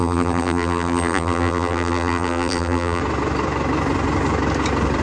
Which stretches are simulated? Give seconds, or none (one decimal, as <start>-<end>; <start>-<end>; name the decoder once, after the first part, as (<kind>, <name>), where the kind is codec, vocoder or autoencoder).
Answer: 0.0-3.0 (vocoder, BigVGAN v2)

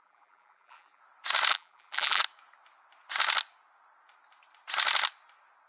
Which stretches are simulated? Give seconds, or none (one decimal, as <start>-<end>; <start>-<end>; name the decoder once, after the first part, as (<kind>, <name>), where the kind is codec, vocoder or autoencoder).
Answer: 0.0-1.0 (vocoder, BigVGAN v2); 1.5-2.2

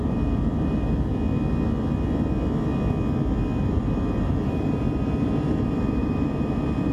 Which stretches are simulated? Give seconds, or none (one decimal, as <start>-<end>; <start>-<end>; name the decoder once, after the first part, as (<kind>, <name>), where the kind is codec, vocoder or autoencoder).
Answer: 0.0-1.1 (vocoder, BigVGAN v2); 3.7-6.9

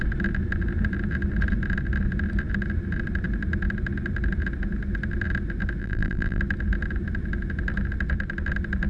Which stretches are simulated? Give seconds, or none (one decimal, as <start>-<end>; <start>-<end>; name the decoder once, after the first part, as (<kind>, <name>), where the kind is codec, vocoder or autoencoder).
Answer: 5.8-6.4 (vocoder, BigVGAN v2)

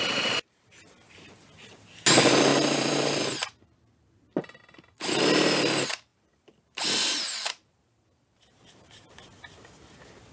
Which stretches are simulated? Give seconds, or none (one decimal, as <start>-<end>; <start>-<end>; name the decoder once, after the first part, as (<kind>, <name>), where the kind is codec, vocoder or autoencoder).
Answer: 2.5-3.2 (vocoder, BigVGAN v2); 6.1-9.6

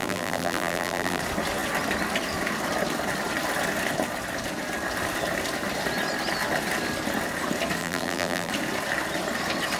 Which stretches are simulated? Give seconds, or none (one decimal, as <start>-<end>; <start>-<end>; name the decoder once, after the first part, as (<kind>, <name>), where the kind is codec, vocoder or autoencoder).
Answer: 0.0-1.2 (vocoder, BigVGAN v2); 7.8-8.5

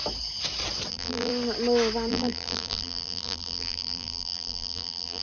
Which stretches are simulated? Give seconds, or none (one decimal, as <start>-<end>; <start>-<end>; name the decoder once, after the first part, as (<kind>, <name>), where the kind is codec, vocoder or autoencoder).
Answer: 0.9-1.3 (vocoder, BigVGAN v2); 2.1-5.2

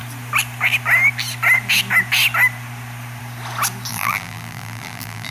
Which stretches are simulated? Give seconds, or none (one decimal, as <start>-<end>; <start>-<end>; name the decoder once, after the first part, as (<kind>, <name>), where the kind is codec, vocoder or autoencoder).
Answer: 3.9-5.3 (vocoder, BigVGAN v2)